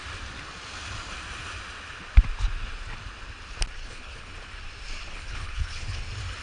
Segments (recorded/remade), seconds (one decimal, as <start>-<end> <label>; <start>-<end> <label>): 0.0-3.8 recorded; 3.8-4.3 remade; 4.3-5.1 recorded; 5.1-6.0 remade; 6.0-6.4 recorded